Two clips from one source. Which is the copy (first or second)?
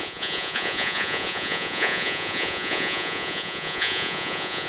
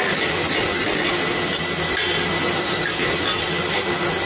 first